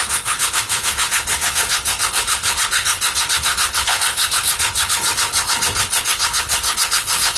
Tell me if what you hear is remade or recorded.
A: remade